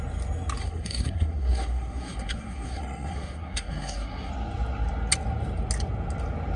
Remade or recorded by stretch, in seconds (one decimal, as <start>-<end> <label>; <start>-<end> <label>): 0.0-0.6 recorded; 0.6-4.3 remade; 4.3-6.6 recorded